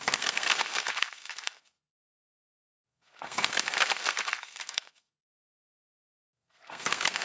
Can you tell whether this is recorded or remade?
remade